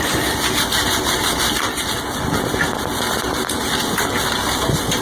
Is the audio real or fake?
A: real